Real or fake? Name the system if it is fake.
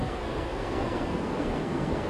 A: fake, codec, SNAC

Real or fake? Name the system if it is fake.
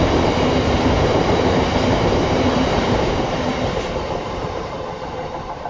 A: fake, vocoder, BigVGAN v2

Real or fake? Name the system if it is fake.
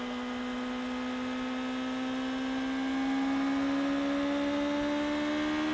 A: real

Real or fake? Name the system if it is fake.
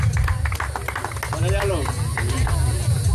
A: real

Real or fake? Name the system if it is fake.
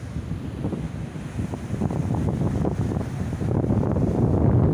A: real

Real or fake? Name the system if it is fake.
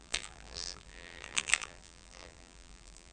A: fake, vocoder, BigVGAN v2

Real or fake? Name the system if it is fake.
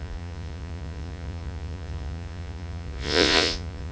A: fake, vocoder, Vocos